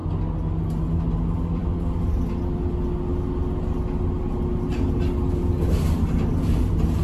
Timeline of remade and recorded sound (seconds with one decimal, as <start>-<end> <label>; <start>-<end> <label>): 0.0-7.0 recorded